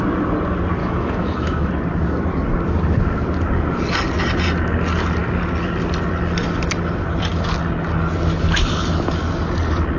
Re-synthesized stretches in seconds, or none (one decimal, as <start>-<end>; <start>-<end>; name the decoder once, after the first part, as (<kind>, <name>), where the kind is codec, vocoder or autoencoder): 0.8-1.7 (autoencoder, DAC-VAE)

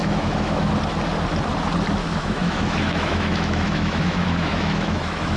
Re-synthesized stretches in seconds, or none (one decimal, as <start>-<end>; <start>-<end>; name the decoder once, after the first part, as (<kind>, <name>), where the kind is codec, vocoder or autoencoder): 0.0-0.7 (autoencoder, DAC-VAE); 2.0-5.4

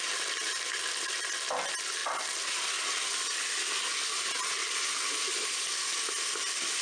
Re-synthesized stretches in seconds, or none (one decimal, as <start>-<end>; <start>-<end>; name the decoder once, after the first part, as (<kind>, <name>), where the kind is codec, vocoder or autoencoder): none

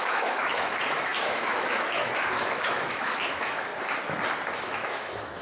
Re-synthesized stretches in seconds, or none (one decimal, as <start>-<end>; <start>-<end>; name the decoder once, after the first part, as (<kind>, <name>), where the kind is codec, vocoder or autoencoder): 0.0-3.7 (autoencoder, DAC-VAE); 4.5-5.4

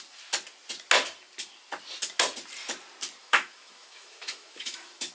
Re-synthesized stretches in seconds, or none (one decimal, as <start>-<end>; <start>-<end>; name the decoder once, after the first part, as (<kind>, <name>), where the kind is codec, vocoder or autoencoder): 3.2-5.1 (autoencoder, DAC-VAE)

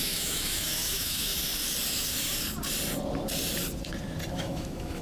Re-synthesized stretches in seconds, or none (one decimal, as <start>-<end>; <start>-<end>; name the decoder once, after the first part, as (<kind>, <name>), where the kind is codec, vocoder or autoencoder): 0.0-1.3 (autoencoder, DAC-VAE); 4.3-5.0